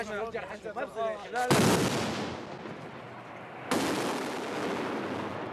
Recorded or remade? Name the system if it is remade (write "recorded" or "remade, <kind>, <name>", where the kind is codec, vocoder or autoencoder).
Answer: recorded